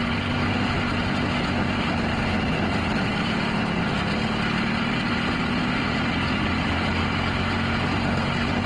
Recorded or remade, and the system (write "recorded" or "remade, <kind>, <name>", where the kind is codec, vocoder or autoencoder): recorded